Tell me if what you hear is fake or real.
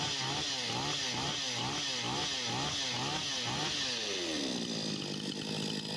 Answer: real